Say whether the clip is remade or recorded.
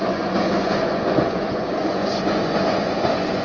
remade